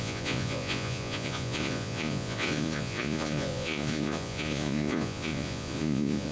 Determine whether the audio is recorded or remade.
remade